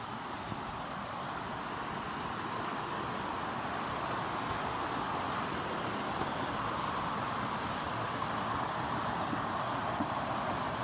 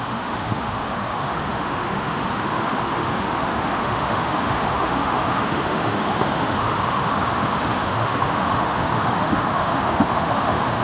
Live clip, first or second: first